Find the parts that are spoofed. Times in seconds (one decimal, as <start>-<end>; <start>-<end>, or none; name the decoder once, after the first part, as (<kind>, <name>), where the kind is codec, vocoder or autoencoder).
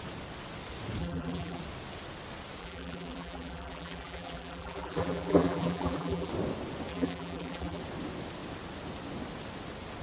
1.0-1.6 (vocoder, BigVGAN v2); 2.6-6.3; 6.9-7.8